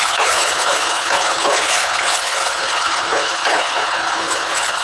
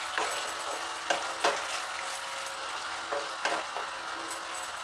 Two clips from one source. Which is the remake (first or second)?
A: first